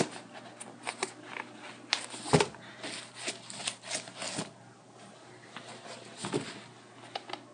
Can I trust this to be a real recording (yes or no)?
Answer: yes